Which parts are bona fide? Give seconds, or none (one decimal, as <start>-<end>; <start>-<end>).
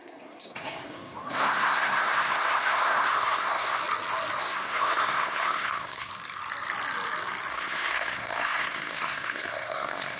3.8-4.4; 6.1-7.5